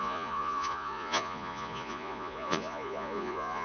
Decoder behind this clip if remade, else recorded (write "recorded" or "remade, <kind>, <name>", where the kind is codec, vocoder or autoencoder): remade, vocoder, Vocos